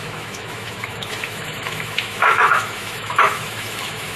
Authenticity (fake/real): fake